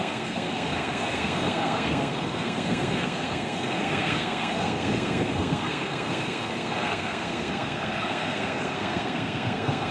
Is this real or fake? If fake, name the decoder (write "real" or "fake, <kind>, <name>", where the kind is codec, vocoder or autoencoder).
fake, codec, SNAC